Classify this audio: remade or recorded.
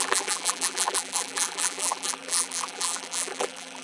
remade